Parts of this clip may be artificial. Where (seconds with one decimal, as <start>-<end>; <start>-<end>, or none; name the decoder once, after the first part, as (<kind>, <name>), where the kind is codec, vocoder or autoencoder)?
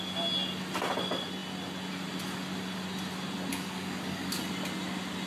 3.5-4.4 (codec, DAC)